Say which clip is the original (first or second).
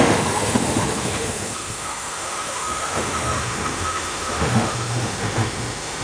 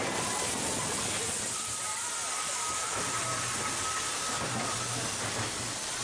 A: second